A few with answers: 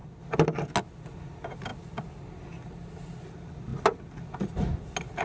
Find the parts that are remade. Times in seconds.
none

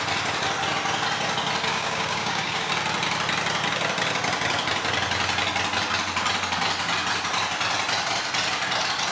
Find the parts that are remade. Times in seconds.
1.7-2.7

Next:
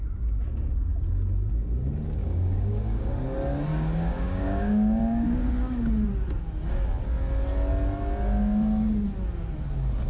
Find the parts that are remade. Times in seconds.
2.2-3.1; 3.7-5.8

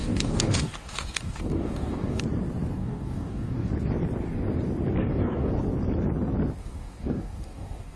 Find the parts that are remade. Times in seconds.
0.0-2.2; 2.8-3.7; 5.0-5.5; 6.6-8.0

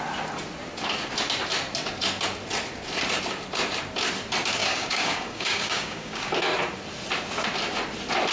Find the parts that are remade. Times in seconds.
4.6-6.3

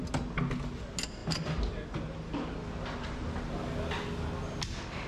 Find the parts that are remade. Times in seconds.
none

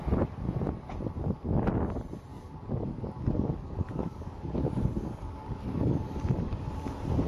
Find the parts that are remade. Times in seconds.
2.3-6.6